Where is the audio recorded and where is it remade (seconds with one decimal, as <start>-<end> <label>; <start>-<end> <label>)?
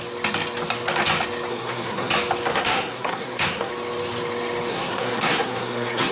0.0-1.5 recorded; 1.5-2.1 remade; 2.1-2.5 recorded; 2.5-3.7 remade; 3.7-4.7 recorded; 4.7-6.1 remade